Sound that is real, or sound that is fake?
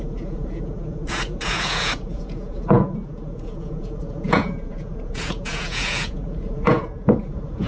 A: fake